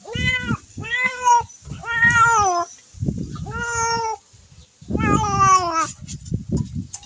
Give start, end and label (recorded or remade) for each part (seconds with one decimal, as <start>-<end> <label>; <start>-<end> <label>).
0.0-0.7 recorded; 0.7-1.3 remade; 1.3-7.1 recorded